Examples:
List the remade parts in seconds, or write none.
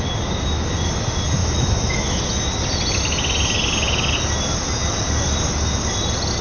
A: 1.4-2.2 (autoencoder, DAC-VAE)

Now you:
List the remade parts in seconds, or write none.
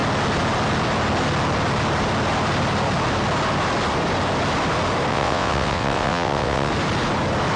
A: 5.1-6.7 (vocoder, WaveNeXt)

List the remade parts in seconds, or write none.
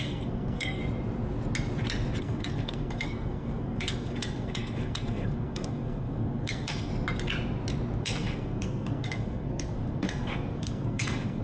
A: 0.0-0.8 (codec, SNAC); 2.2-6.9; 8.0-11.4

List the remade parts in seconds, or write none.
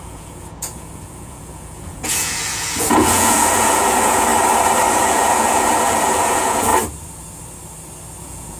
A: 0.0-4.3 (vocoder, Vocos); 4.9-6.7; 8.2-8.6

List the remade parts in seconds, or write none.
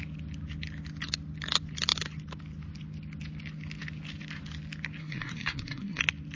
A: 5.0-6.0 (codec, SNAC)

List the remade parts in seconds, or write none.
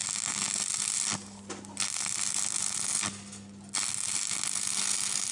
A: none